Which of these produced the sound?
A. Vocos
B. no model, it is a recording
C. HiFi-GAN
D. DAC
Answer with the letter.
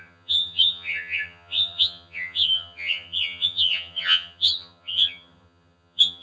C